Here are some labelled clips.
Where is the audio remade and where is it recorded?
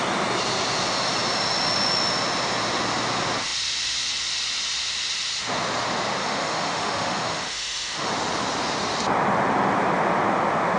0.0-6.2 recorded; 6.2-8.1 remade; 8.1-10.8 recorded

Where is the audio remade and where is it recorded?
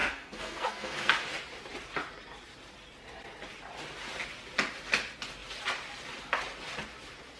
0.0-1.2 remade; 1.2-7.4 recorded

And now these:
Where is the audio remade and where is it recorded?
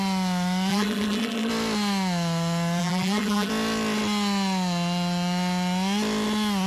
0.0-0.7 recorded; 0.7-1.5 remade; 1.5-2.8 recorded; 2.8-3.5 remade; 3.5-6.7 recorded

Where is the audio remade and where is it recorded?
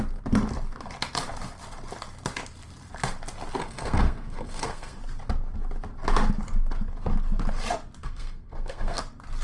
0.0-3.6 recorded; 3.6-5.0 remade; 5.0-8.0 recorded; 8.0-9.0 remade; 9.0-9.4 recorded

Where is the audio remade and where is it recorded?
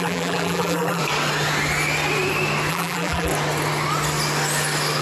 0.0-1.0 remade; 1.0-2.7 recorded; 2.7-3.3 remade; 3.3-5.0 recorded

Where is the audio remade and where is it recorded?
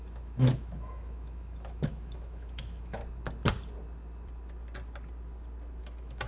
0.0-3.0 remade; 3.0-5.8 recorded; 5.8-6.3 remade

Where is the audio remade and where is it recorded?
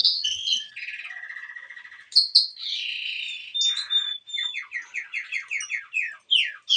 0.0-0.7 remade; 0.7-6.8 recorded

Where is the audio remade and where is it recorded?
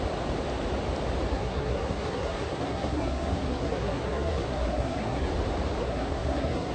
0.0-1.3 recorded; 1.3-5.3 remade; 5.3-5.8 recorded; 5.8-6.7 remade